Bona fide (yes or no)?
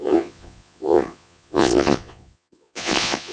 no